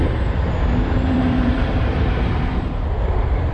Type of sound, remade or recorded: remade